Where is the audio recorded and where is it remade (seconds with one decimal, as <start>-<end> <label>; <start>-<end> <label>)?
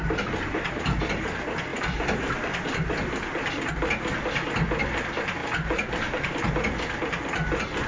0.0-1.7 recorded; 1.7-3.7 remade; 3.7-5.4 recorded; 5.4-6.5 remade; 6.5-7.9 recorded